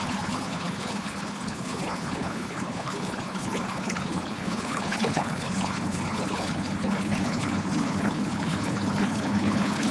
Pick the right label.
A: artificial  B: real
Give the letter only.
A